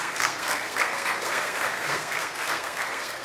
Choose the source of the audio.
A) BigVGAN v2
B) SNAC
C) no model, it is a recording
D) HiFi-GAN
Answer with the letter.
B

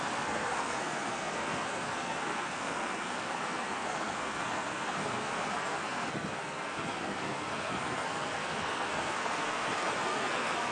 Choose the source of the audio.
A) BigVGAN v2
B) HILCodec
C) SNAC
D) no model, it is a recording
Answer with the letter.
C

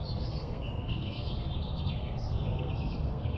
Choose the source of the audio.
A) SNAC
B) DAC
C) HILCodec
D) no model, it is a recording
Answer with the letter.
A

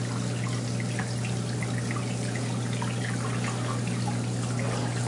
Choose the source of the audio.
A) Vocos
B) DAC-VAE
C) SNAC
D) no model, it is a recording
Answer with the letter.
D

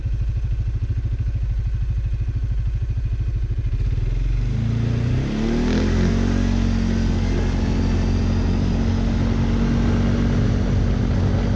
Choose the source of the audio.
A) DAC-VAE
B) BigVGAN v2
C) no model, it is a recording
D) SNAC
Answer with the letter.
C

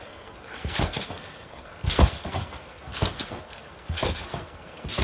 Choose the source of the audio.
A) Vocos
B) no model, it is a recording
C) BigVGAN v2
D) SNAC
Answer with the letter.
D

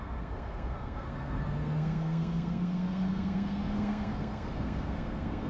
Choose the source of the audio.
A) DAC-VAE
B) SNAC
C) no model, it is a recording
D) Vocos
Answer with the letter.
B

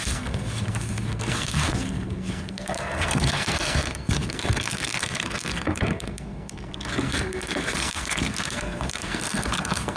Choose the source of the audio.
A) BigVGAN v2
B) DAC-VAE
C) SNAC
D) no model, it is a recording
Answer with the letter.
C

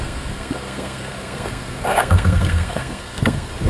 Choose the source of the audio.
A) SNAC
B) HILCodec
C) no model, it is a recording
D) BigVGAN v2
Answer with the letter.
A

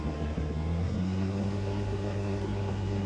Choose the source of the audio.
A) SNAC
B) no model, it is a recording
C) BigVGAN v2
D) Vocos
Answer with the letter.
A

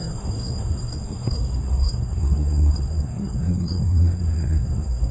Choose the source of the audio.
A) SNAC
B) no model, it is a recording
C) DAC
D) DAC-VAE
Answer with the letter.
A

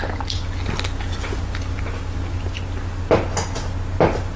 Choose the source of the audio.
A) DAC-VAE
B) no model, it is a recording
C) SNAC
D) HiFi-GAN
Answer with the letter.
B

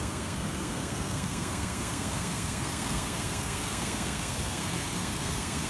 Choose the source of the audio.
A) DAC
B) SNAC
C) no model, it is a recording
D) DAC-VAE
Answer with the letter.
B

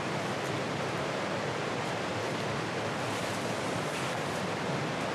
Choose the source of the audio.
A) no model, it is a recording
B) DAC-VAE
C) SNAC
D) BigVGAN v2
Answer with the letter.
A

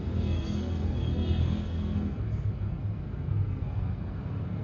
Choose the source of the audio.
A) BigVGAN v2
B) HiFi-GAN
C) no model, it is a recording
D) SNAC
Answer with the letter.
D